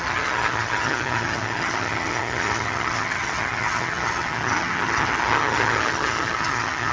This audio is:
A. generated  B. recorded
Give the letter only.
A